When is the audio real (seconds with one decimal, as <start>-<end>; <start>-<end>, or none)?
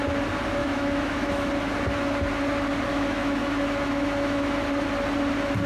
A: 0.0-0.6; 1.5-2.9; 4.5-5.7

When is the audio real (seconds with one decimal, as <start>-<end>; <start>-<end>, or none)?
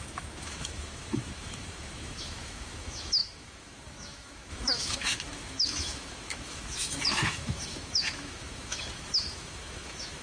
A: none